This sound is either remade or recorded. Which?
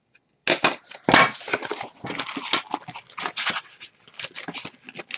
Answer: recorded